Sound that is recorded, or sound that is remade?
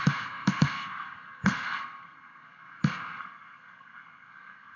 remade